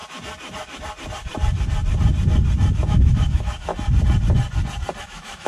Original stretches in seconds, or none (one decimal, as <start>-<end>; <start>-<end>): 0.0-2.9; 3.7-5.0